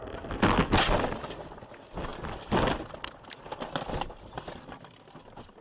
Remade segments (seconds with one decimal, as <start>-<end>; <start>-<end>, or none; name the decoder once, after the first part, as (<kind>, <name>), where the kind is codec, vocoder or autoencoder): none